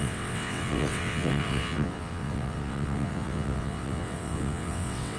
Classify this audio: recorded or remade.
remade